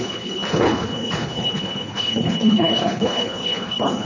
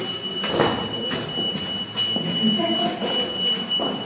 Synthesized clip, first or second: first